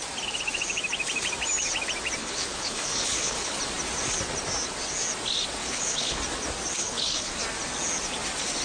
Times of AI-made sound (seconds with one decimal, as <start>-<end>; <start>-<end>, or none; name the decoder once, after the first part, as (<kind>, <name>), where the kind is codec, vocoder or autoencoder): 2.2-3.6 (codec, HILCodec); 5.6-6.2; 6.8-7.3